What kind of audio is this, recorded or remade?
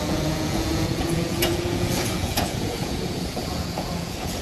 remade